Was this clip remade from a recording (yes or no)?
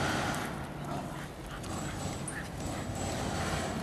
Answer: no